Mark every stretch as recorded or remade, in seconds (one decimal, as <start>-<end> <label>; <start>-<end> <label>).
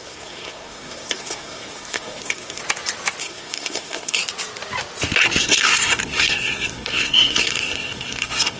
0.0-2.6 remade; 2.6-3.2 recorded; 3.2-4.2 remade; 4.2-5.4 recorded; 5.4-8.6 remade